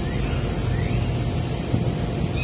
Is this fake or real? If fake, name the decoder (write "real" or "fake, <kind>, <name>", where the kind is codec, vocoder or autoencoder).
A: real